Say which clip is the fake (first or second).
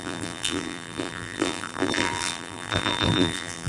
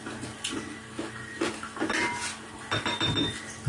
first